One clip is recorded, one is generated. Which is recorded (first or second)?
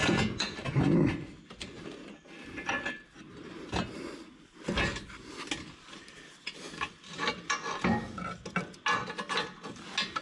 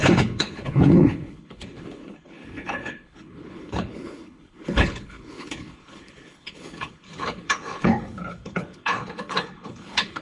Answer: first